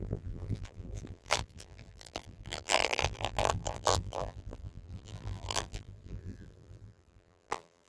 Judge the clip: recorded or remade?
remade